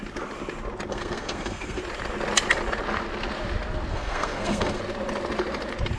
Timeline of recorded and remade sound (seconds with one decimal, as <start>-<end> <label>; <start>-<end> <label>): 0.0-0.9 recorded; 0.9-1.8 remade; 1.8-3.9 recorded; 3.9-4.8 remade; 4.8-6.0 recorded